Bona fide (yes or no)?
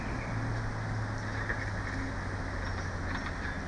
yes